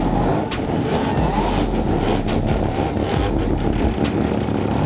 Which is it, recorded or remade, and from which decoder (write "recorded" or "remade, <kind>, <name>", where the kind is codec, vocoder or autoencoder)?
recorded